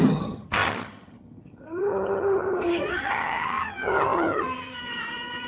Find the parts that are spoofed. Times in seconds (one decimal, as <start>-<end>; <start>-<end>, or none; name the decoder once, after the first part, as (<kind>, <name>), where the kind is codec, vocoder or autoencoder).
0.0-5.5 (vocoder, HiFi-GAN)